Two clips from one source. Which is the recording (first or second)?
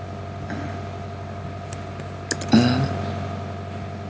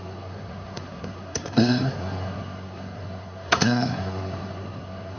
first